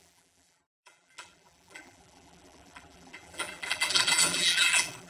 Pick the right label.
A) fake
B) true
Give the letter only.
A